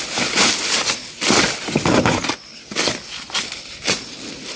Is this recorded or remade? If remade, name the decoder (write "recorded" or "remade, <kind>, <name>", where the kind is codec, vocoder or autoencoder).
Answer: recorded